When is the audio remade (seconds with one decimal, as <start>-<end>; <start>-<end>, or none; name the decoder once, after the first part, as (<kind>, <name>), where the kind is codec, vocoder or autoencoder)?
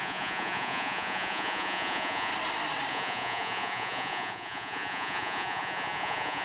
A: 0.0-2.3 (vocoder, Vocos); 2.9-6.4